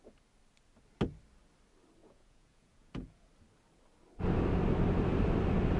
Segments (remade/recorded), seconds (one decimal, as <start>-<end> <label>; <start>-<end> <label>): 0.0-2.0 recorded; 2.0-3.3 remade; 3.3-5.8 recorded